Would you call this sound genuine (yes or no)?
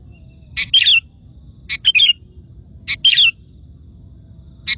yes